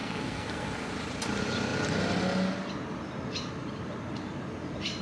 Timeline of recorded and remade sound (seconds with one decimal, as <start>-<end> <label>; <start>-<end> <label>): 0.0-0.9 remade; 0.9-5.0 recorded